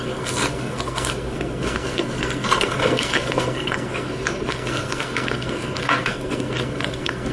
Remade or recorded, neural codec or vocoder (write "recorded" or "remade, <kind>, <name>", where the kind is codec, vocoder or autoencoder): remade, codec, SNAC